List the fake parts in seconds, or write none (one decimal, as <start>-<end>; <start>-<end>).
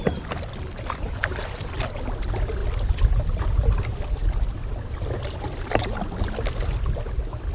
none